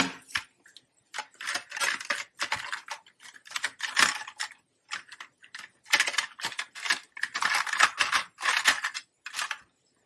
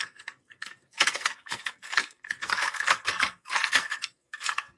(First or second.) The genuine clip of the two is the first